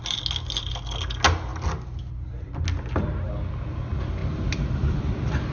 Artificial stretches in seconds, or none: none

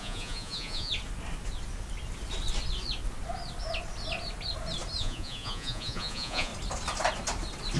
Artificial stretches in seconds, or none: 0.0-0.9; 5.0-6.5

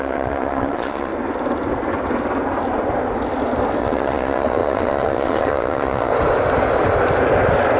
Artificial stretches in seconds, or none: 0.0-1.1; 3.8-6.1

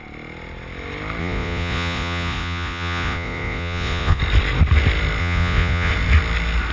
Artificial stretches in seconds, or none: 1.2-4.2; 5.2-5.9

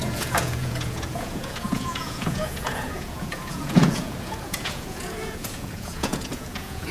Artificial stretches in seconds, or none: 0.0-6.9

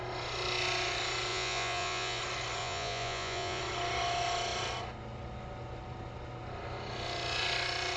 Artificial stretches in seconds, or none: 1.3-2.2; 2.6-3.6

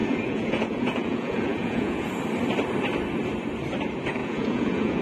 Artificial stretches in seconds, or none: 0.0-2.2; 4.2-5.0